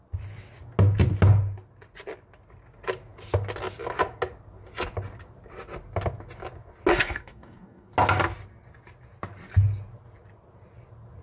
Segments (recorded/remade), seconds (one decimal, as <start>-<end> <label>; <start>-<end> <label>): 0.0-6.9 recorded; 6.9-7.9 remade; 7.9-11.2 recorded